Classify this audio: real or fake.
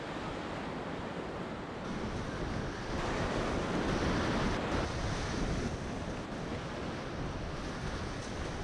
real